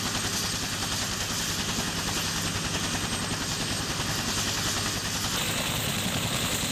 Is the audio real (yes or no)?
yes